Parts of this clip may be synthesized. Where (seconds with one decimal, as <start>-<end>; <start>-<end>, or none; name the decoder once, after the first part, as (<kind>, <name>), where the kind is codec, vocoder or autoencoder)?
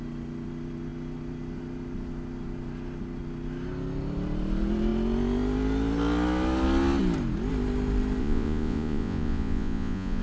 8.2-10.2 (vocoder, Vocos)